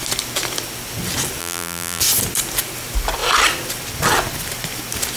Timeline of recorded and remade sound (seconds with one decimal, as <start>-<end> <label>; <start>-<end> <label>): 0.0-1.4 recorded; 1.4-2.0 remade; 2.0-5.2 recorded